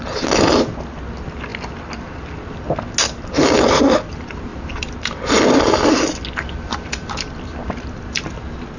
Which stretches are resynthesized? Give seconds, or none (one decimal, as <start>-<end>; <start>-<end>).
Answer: 4.5-6.9